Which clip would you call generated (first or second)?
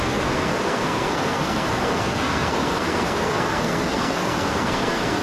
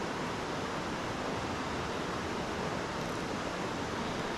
first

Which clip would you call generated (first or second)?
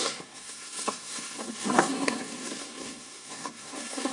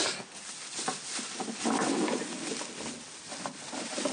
first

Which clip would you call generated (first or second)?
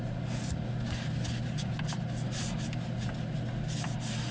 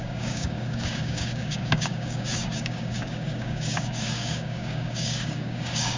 second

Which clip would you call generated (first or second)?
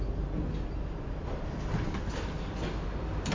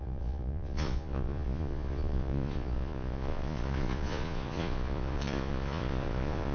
second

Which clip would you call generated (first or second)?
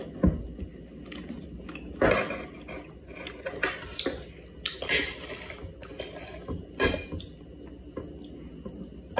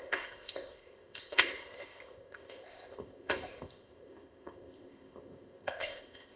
second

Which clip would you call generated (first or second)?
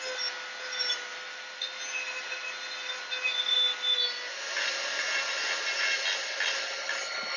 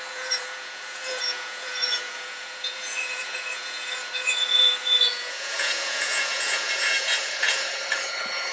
second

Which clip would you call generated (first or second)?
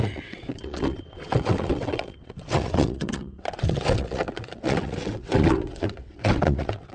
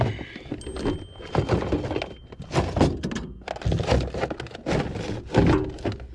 first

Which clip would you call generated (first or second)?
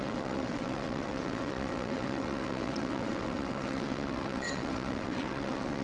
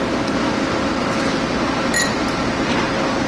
first